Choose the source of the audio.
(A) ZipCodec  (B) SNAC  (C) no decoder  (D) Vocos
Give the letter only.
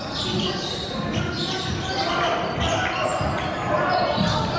C